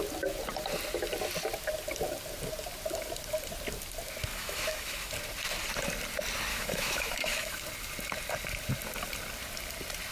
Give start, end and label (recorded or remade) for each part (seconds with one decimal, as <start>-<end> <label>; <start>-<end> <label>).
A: 0.0-4.3 recorded; 4.3-5.1 remade; 5.1-6.5 recorded; 6.5-7.6 remade; 7.6-10.1 recorded